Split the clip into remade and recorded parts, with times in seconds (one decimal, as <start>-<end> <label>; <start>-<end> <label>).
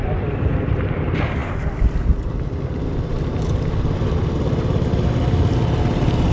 0.0-6.3 recorded